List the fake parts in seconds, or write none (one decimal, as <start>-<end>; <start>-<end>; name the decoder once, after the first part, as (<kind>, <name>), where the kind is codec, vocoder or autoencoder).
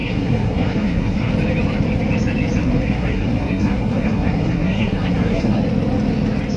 0.0-1.3 (codec, SNAC); 2.6-5.6